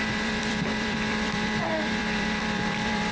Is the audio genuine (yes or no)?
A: no